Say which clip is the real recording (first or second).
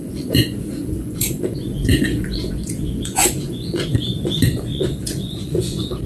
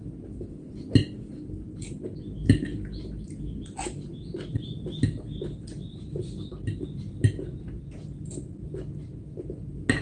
second